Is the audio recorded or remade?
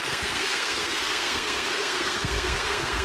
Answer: remade